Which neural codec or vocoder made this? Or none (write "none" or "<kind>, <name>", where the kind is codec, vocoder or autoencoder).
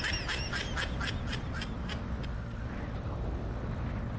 none